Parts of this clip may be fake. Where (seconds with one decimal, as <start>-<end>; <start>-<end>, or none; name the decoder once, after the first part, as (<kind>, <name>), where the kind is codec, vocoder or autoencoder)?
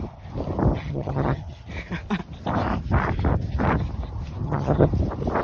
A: 0.7-1.7 (vocoder, HiFi-GAN); 4.4-4.9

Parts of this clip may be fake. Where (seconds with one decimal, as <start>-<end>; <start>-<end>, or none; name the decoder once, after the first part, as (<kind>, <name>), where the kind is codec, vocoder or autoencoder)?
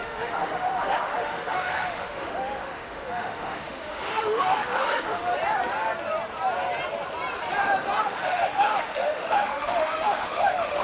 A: 0.0-5.3 (autoencoder, DAC-VAE); 8.0-10.8